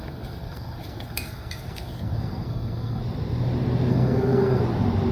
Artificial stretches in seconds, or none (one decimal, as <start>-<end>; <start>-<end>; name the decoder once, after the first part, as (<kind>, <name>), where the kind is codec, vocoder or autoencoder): 0.0-3.0 (codec, SNAC); 3.9-4.6